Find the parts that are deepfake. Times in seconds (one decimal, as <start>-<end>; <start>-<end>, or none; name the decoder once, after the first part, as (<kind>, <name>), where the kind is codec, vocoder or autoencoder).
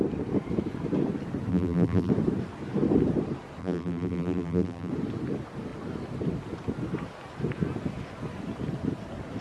1.5-2.1 (vocoder, BigVGAN v2); 3.6-4.9